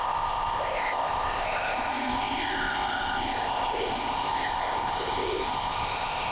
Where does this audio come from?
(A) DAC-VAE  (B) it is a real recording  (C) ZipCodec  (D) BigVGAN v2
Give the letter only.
C